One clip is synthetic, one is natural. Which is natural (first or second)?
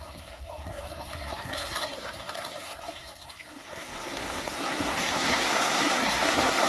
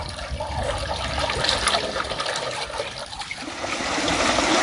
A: second